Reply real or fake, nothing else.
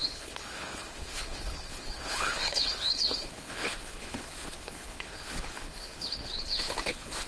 fake